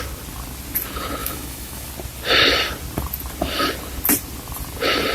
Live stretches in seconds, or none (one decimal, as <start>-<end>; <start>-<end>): 0.0-1.2; 1.9-5.1